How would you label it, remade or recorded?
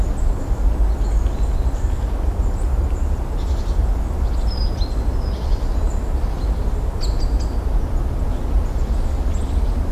recorded